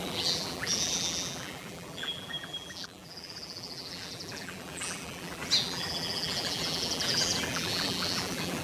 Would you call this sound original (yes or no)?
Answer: no